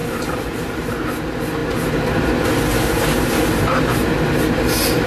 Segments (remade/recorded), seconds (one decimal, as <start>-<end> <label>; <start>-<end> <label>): 0.0-0.9 remade; 0.9-5.1 recorded